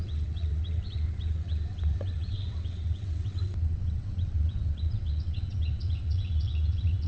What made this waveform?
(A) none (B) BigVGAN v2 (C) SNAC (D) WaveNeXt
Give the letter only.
D